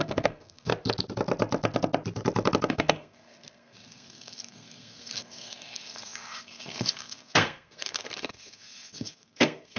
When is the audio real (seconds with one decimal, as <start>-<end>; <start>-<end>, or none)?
0.7-2.7